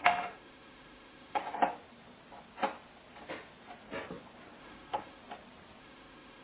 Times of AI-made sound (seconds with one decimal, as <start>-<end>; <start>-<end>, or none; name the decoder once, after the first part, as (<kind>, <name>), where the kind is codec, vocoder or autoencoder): 0.0-1.4 (autoencoder, DAC-VAE); 4.6-5.2; 5.8-6.4